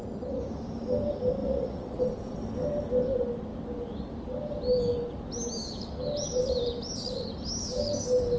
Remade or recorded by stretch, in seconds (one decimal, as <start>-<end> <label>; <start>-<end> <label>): 0.0-1.4 recorded; 1.4-2.0 remade; 2.0-8.4 recorded